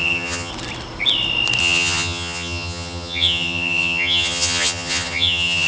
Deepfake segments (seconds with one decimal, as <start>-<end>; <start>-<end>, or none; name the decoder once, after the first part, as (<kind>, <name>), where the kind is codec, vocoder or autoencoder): 0.0-0.5 (vocoder, HiFi-GAN); 1.6-5.7